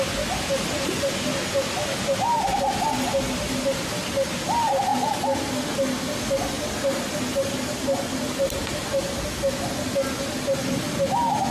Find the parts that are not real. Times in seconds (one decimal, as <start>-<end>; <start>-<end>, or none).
none